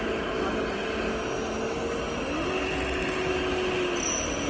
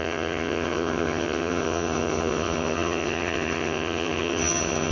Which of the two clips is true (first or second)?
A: first